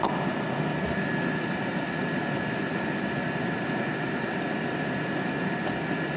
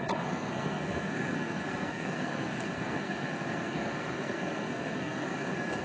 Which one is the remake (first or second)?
second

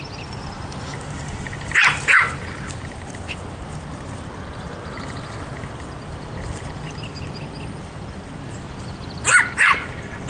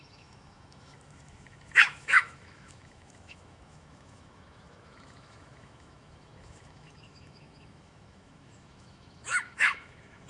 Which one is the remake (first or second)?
second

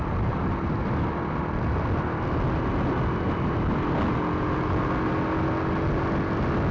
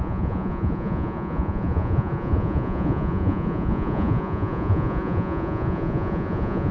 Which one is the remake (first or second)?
second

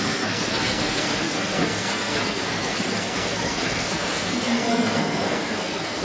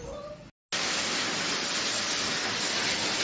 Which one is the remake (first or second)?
first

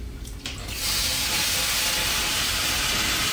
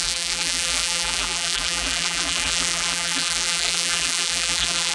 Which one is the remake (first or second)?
second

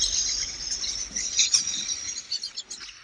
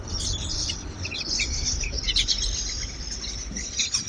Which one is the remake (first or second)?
second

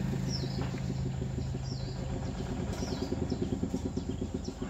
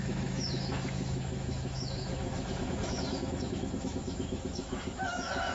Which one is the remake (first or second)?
second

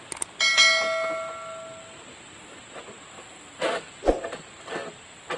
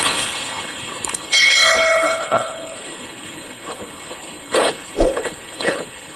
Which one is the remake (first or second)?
second